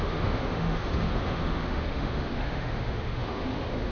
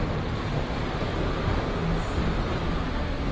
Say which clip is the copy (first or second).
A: first